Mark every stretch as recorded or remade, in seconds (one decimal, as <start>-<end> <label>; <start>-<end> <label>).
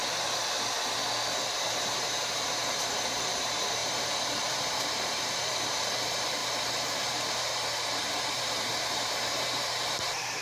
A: 0.0-1.5 recorded; 1.5-6.4 remade; 6.4-7.0 recorded; 7.0-10.4 remade